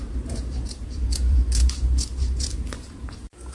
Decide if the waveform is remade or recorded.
remade